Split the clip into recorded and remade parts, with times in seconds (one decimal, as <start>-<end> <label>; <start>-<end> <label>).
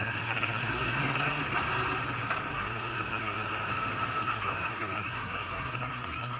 0.0-1.4 remade; 1.4-2.5 recorded; 2.5-3.7 remade; 3.7-4.2 recorded; 4.2-6.4 remade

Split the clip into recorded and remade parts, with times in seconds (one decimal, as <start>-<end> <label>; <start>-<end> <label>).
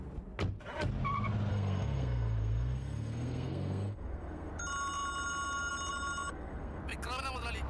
0.0-1.5 recorded; 1.5-4.5 remade; 4.5-6.3 recorded; 6.3-6.8 remade; 6.8-7.7 recorded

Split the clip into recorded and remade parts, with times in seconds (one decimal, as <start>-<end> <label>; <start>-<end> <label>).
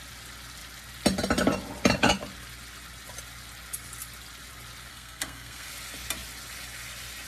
0.0-4.9 recorded; 4.9-5.7 remade; 5.7-7.3 recorded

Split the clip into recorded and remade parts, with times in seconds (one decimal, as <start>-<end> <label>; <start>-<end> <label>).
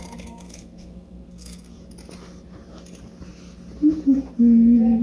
0.0-1.8 remade; 1.8-5.0 recorded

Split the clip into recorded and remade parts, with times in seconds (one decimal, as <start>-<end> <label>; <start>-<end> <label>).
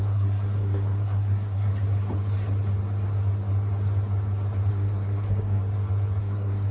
0.0-1.7 remade; 1.7-4.7 recorded; 4.7-5.6 remade; 5.6-6.2 recorded; 6.2-6.7 remade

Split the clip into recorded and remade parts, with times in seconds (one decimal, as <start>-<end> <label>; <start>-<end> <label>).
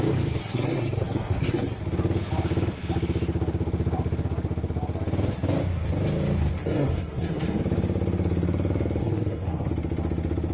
0.0-0.4 recorded; 0.4-1.8 remade; 1.8-6.6 recorded; 6.6-7.6 remade; 7.6-9.0 recorded; 9.0-9.7 remade; 9.7-10.5 recorded